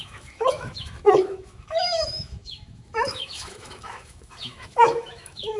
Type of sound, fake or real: fake